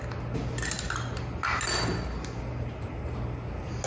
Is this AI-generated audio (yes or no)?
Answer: no